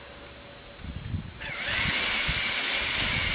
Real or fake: real